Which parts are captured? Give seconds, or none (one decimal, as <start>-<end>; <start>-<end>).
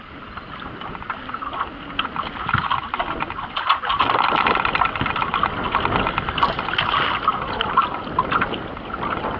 0.0-9.4